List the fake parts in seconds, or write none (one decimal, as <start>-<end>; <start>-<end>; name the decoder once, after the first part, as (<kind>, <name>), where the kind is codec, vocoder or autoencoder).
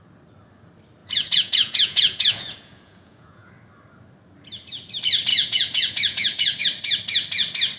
1.0-3.5 (vocoder, Vocos); 5.3-6.6